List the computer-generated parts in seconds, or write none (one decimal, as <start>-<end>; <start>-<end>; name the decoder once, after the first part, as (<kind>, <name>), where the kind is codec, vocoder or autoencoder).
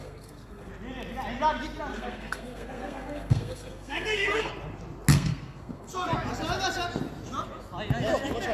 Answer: 0.0-0.7 (codec, SNAC); 1.9-4.5; 5.1-5.9